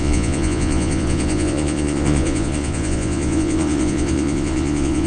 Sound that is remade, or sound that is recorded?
remade